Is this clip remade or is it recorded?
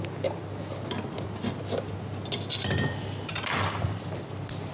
recorded